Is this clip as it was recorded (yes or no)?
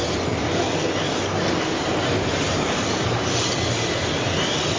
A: yes